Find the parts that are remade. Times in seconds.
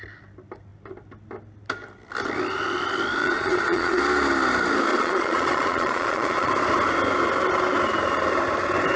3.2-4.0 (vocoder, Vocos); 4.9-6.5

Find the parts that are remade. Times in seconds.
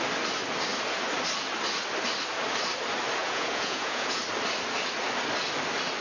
3.2-4.2 (vocoder, Vocos)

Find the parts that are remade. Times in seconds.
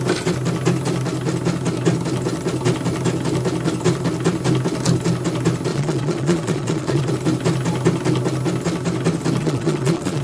5.7-7.1 (vocoder, Vocos); 9.4-10.2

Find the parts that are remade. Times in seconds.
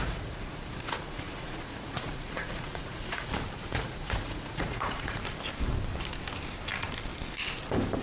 0.0-3.3 (vocoder, Vocos); 3.7-5.2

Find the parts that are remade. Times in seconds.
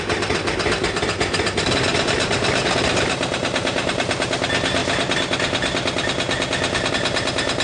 none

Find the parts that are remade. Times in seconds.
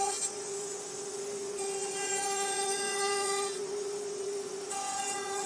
0.0-5.5 (vocoder, Vocos)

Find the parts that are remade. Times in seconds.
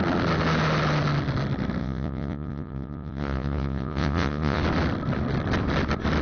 1.8-4.6 (vocoder, Vocos)